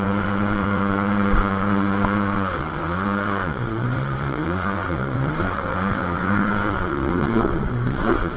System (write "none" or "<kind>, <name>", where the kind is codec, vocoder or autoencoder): vocoder, WaveNeXt